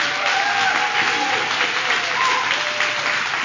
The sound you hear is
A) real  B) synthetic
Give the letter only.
A